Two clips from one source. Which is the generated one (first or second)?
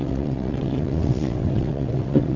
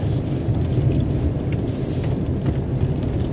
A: first